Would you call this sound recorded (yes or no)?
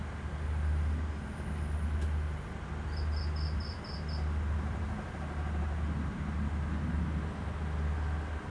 yes